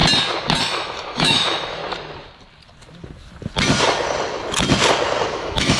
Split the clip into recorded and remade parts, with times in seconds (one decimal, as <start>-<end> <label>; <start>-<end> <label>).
0.0-0.6 recorded; 0.6-1.8 remade; 1.8-5.3 recorded; 5.3-5.8 remade